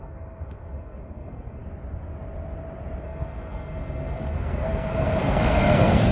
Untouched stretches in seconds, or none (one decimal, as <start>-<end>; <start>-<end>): 1.6-3.0